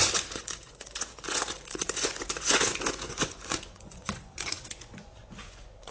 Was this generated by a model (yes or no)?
yes